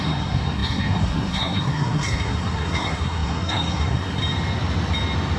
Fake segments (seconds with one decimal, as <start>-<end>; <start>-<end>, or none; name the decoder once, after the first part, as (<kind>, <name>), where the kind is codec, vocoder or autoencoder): 0.0-4.2 (codec, SNAC)